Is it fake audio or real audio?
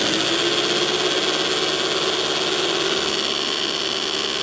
real